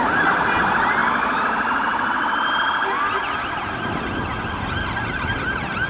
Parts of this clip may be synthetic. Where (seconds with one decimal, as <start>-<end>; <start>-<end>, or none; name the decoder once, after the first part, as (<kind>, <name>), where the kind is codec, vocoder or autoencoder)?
none